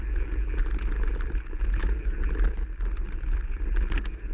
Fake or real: real